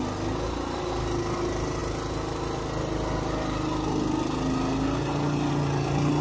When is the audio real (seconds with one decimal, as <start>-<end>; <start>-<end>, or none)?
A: 0.0-6.2